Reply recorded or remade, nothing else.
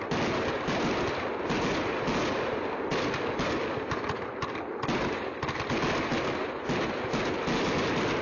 recorded